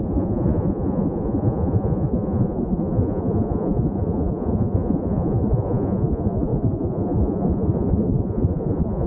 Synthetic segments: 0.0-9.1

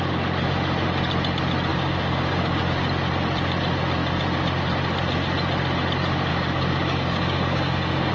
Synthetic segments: 1.7-2.6; 6.3-8.1

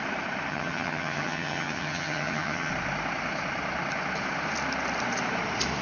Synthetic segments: 0.5-2.7